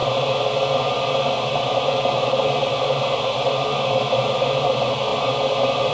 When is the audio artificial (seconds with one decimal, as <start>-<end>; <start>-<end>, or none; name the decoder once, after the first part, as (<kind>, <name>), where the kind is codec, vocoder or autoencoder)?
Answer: none